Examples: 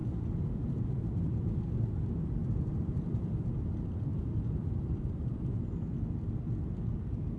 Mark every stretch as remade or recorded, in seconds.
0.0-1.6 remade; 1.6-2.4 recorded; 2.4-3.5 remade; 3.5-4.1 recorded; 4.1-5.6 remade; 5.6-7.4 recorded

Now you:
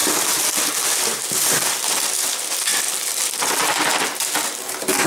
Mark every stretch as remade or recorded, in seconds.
0.0-5.1 recorded

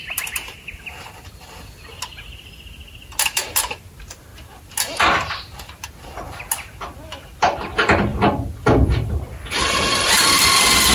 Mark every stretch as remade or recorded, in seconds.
0.0-8.1 recorded; 8.1-10.1 remade; 10.1-10.9 recorded

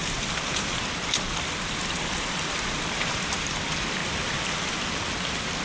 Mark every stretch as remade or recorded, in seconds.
0.0-4.0 remade; 4.0-5.0 recorded; 5.0-5.6 remade